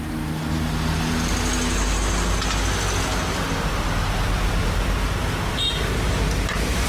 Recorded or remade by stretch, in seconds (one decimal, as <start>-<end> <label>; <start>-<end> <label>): 0.0-6.9 recorded